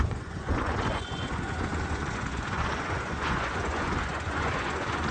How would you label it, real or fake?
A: fake